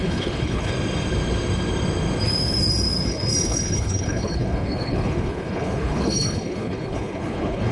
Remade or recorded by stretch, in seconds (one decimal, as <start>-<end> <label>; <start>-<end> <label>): 0.0-0.7 remade; 0.7-3.1 recorded; 3.1-7.7 remade